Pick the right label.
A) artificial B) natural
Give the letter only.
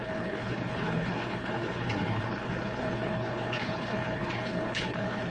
A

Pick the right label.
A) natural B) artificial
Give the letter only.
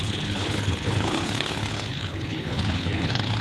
B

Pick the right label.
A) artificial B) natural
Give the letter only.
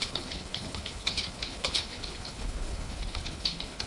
A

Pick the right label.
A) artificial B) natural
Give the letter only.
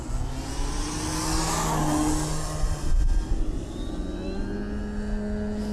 B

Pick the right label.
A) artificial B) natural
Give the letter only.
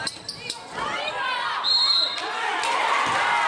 B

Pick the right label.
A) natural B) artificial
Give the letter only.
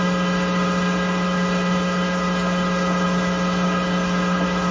B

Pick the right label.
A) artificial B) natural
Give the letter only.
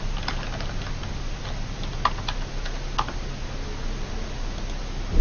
B